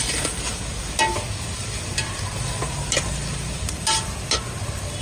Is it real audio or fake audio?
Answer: real